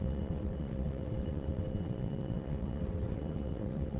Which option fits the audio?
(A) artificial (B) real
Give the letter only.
A